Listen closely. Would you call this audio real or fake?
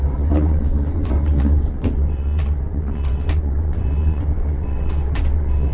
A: fake